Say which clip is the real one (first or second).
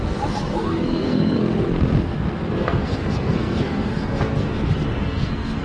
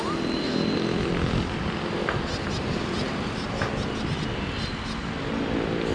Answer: second